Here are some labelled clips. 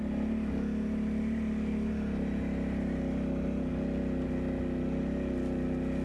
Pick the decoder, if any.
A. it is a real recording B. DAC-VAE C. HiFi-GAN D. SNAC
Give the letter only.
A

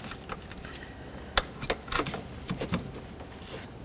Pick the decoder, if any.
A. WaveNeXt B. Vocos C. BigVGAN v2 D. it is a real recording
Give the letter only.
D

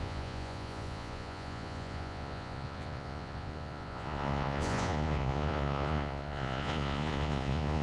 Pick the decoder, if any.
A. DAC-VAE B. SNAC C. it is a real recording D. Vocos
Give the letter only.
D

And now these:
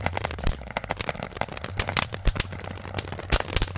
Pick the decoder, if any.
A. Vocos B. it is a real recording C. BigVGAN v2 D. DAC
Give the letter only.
C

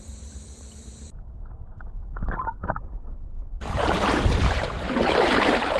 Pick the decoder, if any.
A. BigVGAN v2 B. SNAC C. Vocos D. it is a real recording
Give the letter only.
A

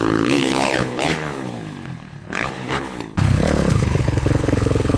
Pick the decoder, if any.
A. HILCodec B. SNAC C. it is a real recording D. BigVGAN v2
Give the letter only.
A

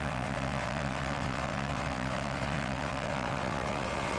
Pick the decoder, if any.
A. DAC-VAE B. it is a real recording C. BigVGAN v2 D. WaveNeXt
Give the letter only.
D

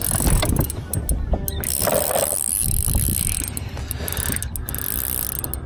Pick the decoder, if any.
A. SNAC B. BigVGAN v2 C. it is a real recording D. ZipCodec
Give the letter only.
C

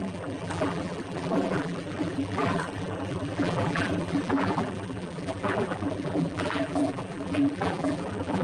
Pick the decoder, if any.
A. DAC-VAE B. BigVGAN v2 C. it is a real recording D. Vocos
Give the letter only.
B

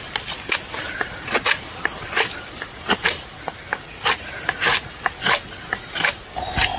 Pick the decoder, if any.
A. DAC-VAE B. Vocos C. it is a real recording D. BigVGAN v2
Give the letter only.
C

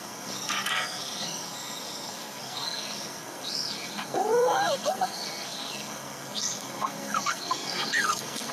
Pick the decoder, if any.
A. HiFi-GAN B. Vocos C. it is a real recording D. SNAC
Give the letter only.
D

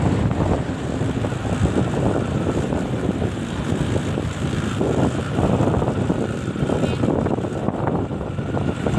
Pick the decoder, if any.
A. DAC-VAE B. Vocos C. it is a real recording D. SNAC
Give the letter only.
C